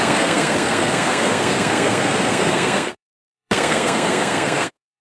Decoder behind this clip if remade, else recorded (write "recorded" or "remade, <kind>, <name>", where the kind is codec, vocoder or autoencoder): remade, codec, SNAC